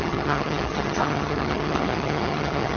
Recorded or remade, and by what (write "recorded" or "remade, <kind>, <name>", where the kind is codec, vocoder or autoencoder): remade, vocoder, HiFi-GAN